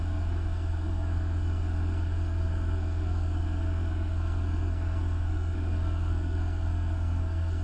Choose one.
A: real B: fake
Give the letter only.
B